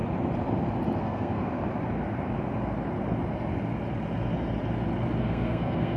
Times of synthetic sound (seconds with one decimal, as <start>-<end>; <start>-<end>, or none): 1.0-1.6; 5.2-6.0